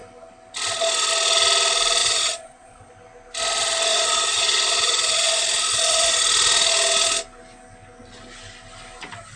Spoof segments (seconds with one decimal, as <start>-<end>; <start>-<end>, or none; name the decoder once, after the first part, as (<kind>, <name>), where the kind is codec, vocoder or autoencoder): 2.0-2.9 (vocoder, Vocos); 3.9-6.2